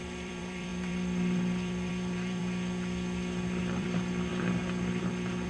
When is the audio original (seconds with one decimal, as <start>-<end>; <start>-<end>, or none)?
2.4-3.6; 4.3-5.0